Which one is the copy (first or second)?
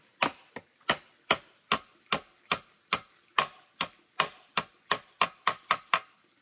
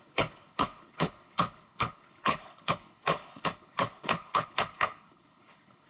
second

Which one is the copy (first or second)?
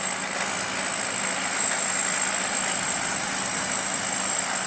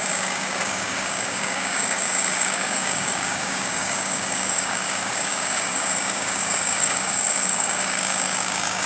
second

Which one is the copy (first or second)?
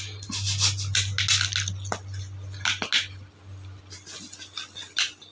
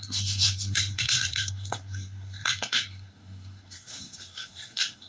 second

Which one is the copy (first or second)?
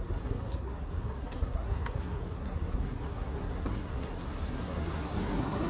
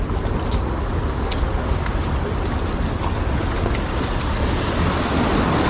first